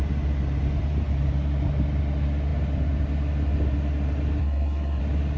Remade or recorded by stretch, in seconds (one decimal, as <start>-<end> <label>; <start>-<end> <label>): 0.0-4.4 recorded; 4.4-5.0 remade; 5.0-5.4 recorded